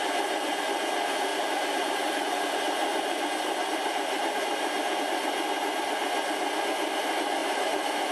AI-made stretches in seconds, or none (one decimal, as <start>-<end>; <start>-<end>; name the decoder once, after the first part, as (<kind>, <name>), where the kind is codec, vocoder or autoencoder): 1.3-5.0 (vocoder, BigVGAN v2); 7.4-8.1